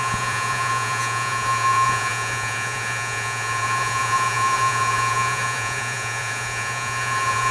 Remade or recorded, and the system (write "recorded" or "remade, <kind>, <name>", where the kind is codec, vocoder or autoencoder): remade, vocoder, Vocos